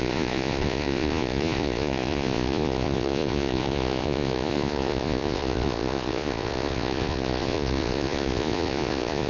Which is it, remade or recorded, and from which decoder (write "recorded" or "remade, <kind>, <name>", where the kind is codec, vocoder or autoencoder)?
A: remade, vocoder, Vocos